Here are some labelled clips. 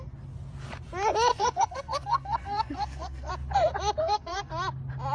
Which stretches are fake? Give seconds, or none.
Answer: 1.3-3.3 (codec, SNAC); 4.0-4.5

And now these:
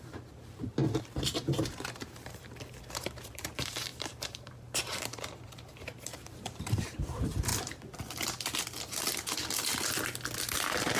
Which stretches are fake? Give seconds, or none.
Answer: 0.0-0.8 (vocoder, BigVGAN v2); 1.6-7.5; 10.4-11.0

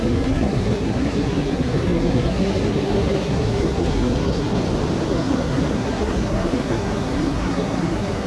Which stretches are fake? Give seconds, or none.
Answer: 0.0-4.6 (codec, SNAC); 5.1-8.3

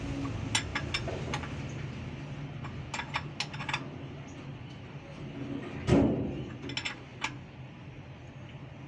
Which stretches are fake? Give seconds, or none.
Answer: none

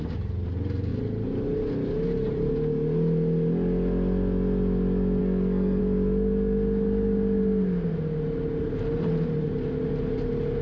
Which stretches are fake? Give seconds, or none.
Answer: 5.2-5.8 (codec, SNAC)

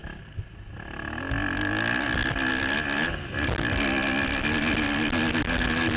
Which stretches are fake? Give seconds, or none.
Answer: none